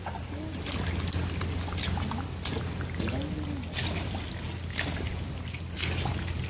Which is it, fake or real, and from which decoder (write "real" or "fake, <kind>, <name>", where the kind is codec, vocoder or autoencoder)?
real